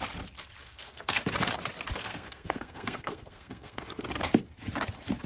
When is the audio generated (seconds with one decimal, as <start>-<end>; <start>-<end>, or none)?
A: 0.6-1.2; 2.0-4.0